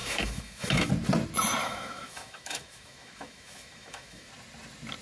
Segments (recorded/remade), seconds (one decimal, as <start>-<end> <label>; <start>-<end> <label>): 0.0-0.9 remade; 0.9-1.6 recorded; 1.6-4.3 remade; 4.3-5.0 recorded